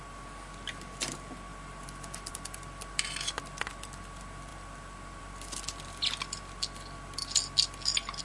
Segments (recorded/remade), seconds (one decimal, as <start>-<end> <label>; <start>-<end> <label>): 0.0-8.2 recorded